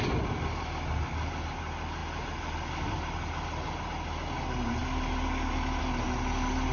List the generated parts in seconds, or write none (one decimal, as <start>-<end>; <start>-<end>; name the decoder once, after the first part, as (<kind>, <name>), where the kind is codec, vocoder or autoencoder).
none